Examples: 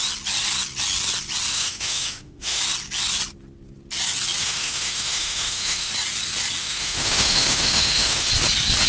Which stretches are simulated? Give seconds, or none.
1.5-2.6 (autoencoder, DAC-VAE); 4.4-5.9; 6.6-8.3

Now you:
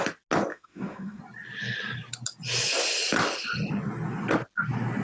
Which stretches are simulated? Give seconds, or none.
0.5-1.2 (autoencoder, DAC-VAE)

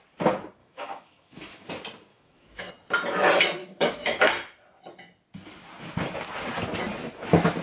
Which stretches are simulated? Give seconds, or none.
0.6-1.7 (autoencoder, DAC-VAE); 2.1-2.7; 3.6-4.3